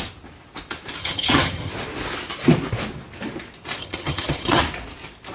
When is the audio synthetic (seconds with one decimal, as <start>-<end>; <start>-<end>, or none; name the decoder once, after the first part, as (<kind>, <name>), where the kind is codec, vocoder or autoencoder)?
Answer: 1.0-1.7 (vocoder, HiFi-GAN); 3.8-4.6